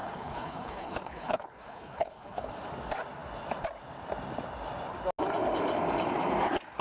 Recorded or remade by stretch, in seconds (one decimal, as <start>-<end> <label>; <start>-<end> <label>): 0.0-2.5 remade; 2.5-6.8 recorded